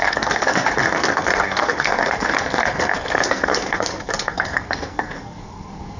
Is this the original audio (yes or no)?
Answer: no